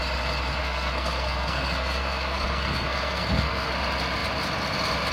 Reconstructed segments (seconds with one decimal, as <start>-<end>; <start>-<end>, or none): 0.6-3.7